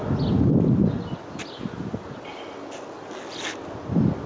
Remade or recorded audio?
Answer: recorded